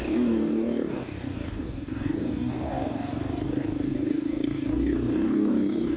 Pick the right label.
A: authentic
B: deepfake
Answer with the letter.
B